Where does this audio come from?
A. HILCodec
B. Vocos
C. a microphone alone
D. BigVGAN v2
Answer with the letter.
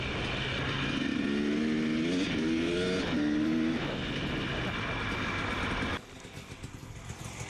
C